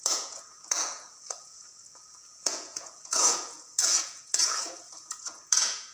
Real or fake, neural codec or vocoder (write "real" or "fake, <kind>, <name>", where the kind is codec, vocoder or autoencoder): fake, vocoder, Vocos